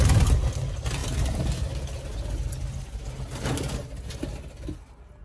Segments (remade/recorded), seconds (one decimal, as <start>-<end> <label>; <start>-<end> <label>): 0.0-5.2 recorded